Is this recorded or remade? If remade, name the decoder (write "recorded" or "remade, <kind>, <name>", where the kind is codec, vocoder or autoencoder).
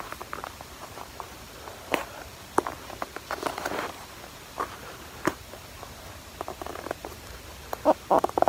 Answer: recorded